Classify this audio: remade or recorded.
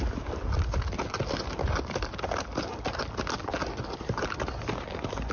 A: recorded